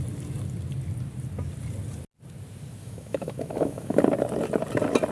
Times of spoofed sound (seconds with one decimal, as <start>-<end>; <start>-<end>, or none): 2.8-4.0